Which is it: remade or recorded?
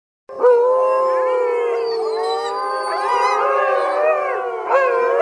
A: recorded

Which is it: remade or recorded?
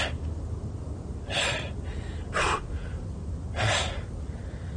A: recorded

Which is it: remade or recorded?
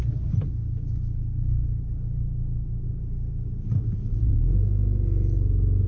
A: recorded